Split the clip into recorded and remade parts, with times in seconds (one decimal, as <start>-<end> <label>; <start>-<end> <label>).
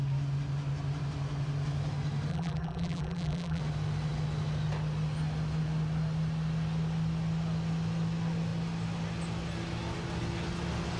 0.0-2.3 recorded; 2.3-3.6 remade; 3.6-11.0 recorded